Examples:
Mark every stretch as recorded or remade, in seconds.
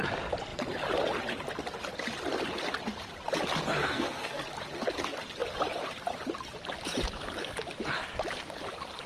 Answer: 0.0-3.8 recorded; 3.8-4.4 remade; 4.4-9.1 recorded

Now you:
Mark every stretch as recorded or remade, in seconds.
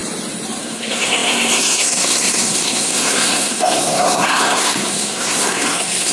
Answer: 0.0-0.6 recorded; 0.6-6.1 remade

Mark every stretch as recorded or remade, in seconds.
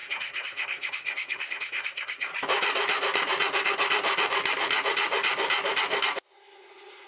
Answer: 0.0-2.3 remade; 2.3-6.2 recorded; 6.2-7.1 remade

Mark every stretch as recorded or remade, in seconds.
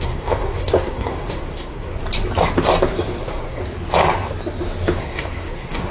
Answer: 0.0-2.0 remade; 2.0-3.2 recorded; 3.2-3.6 remade; 3.6-5.0 recorded; 5.0-5.9 remade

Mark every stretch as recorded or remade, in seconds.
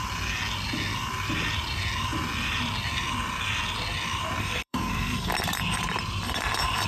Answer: 0.0-4.4 recorded; 4.4-5.3 remade; 5.3-6.9 recorded